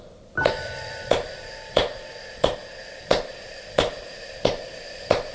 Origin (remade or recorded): remade